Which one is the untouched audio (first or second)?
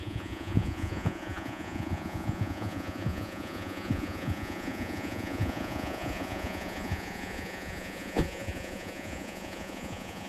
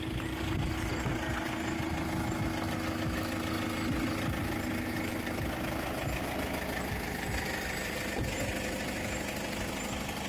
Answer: second